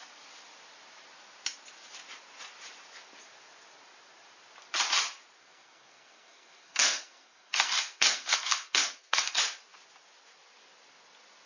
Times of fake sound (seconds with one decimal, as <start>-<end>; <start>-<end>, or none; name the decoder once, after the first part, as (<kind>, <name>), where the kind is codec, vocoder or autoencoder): 5.4-9.4 (codec, SNAC)